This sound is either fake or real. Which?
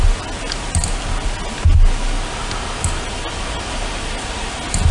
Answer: real